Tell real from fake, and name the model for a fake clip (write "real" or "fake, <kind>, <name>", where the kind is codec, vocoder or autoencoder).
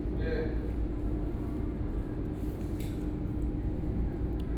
real